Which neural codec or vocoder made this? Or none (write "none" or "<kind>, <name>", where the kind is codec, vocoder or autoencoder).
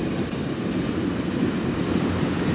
none